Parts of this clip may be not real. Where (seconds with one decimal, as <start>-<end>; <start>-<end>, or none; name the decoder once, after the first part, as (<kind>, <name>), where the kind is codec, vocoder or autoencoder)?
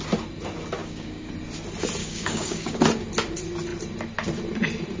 0.8-1.3 (codec, DAC); 2.0-2.8